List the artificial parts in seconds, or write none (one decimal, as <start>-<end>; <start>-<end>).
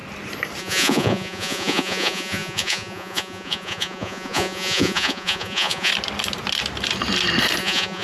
0.6-5.9; 7.6-8.0